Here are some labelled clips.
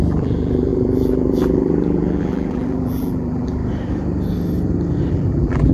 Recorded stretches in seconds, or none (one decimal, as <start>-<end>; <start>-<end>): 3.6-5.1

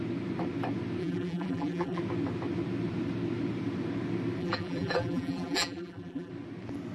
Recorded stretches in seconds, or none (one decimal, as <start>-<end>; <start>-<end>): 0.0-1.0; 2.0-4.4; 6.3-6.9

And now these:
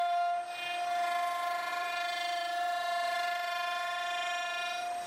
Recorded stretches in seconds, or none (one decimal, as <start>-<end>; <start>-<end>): 0.0-1.7

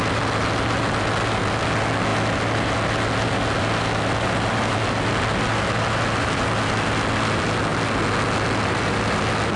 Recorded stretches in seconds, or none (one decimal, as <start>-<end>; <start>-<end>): 0.0-9.6